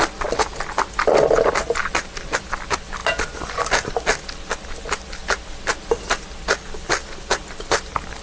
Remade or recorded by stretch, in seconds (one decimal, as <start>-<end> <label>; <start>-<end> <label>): 0.0-8.2 recorded